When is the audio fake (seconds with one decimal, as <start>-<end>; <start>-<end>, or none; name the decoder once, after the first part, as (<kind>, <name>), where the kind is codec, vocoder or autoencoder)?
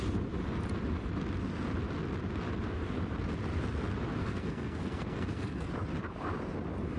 4.2-5.7 (codec, SNAC)